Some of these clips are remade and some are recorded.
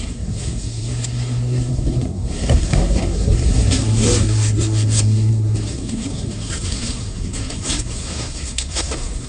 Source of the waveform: remade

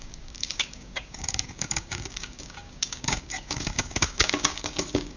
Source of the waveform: remade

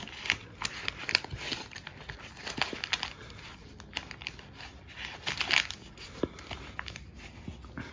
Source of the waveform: recorded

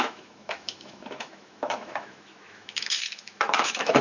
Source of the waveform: remade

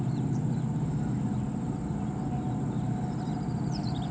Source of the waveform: remade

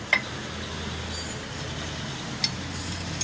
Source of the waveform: recorded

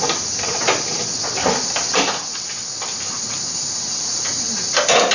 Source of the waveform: recorded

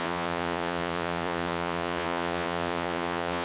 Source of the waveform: remade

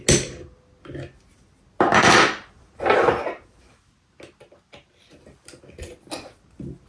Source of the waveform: recorded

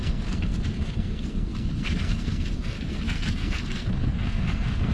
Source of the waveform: remade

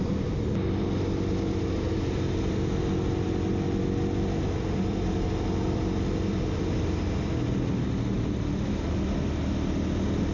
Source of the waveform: recorded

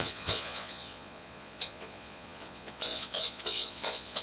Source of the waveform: remade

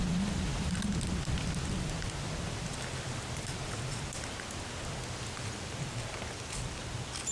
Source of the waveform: recorded